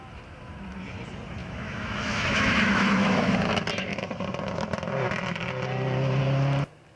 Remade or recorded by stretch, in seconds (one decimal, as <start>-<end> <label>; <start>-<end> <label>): 0.0-1.4 recorded; 1.4-3.3 remade; 3.3-7.0 recorded